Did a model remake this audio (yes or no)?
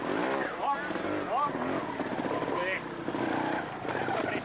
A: no